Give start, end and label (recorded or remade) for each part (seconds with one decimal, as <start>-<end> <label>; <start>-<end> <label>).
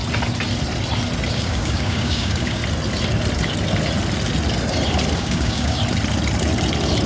0.0-1.3 recorded; 1.3-2.6 remade; 2.6-5.2 recorded; 5.2-5.8 remade; 5.8-7.1 recorded